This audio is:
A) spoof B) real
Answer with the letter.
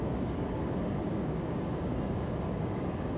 A